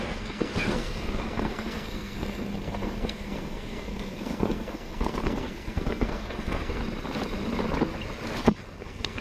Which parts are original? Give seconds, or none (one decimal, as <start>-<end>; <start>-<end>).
6.8-8.4